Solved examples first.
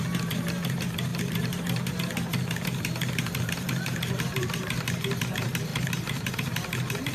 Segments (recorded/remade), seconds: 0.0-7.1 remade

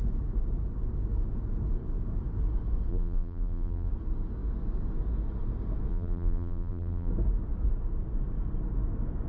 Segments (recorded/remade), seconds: 0.0-2.9 recorded; 2.9-3.9 remade; 3.9-5.9 recorded; 5.9-7.1 remade; 7.1-9.3 recorded

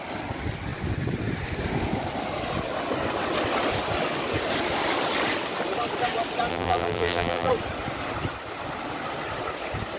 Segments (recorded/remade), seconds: 0.0-6.5 recorded; 6.5-7.5 remade; 7.5-10.0 recorded

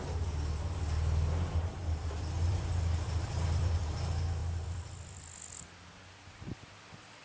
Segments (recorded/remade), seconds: 0.0-1.8 recorded; 1.8-3.8 remade; 3.8-4.4 recorded; 4.4-5.2 remade; 5.2-7.2 recorded

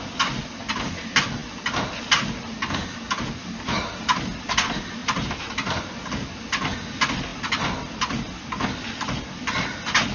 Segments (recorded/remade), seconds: 0.0-5.0 recorded; 5.0-5.8 remade; 5.8-10.1 recorded

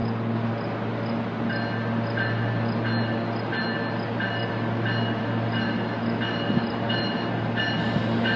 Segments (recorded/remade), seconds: 0.0-8.4 recorded

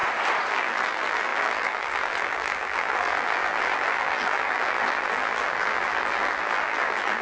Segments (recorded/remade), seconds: 0.0-0.5 recorded; 0.5-7.2 remade